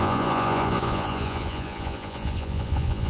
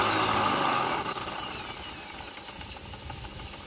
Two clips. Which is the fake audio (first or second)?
first